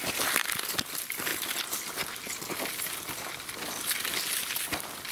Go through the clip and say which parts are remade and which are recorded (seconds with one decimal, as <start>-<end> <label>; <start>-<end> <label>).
0.0-0.4 remade; 0.4-0.9 recorded; 0.9-1.3 remade; 1.3-4.1 recorded; 4.1-5.1 remade